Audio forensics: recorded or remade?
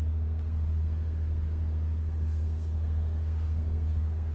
remade